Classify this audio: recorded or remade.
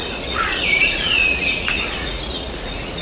remade